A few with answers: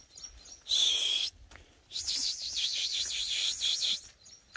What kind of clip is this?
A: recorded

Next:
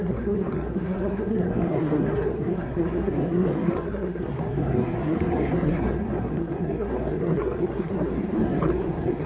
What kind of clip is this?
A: remade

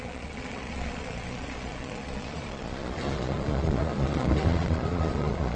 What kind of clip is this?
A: remade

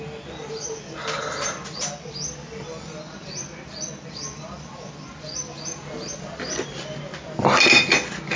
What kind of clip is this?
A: recorded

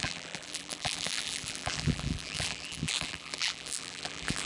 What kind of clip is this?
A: remade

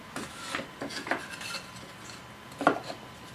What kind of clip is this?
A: recorded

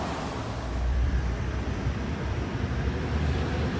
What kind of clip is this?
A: remade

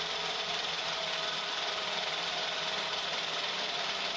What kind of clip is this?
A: remade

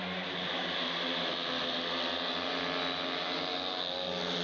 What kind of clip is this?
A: recorded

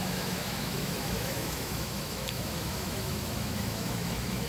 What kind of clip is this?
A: remade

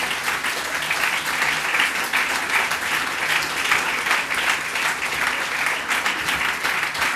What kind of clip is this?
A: recorded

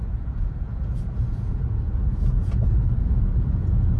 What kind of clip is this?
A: remade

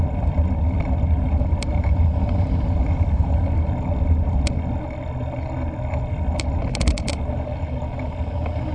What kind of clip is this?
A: recorded